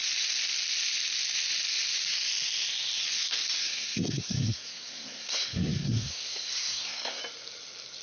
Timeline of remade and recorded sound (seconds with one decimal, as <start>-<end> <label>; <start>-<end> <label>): 0.0-3.6 recorded; 3.6-7.2 remade; 7.2-8.0 recorded